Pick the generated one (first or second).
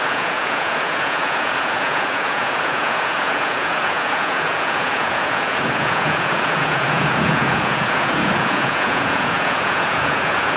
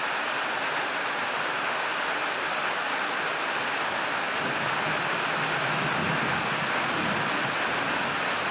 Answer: first